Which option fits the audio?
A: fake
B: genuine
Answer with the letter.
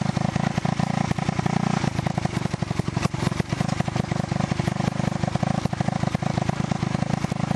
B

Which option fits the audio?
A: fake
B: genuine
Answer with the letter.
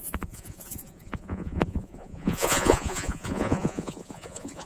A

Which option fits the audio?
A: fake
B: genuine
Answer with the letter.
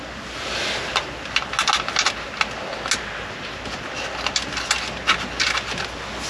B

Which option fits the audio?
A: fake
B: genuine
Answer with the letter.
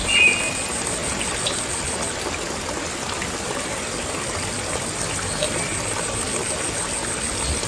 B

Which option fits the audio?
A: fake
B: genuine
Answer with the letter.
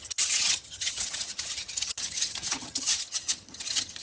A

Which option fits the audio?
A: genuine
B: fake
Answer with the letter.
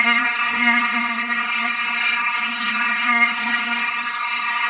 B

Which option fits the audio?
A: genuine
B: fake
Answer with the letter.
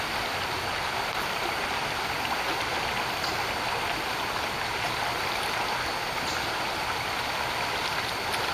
A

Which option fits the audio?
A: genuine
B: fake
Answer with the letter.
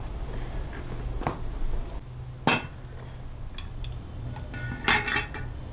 A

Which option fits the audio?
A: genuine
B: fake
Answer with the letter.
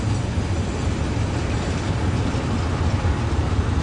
A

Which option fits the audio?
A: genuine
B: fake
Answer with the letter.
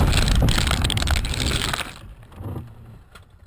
A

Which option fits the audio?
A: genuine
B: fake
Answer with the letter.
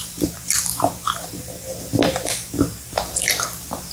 B